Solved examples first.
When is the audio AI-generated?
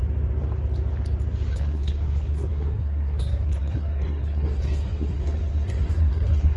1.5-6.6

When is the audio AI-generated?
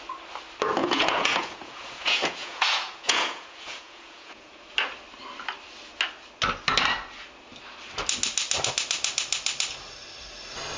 0.8-4.6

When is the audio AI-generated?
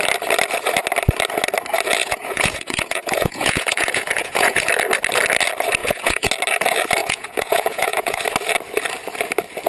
2.0-4.7; 5.8-6.3; 7.0-8.2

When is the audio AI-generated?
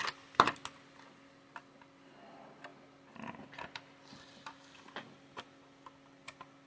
2.7-6.7